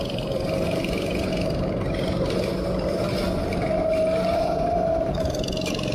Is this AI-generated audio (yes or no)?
no